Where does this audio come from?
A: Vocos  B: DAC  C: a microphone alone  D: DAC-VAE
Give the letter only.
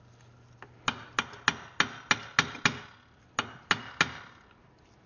C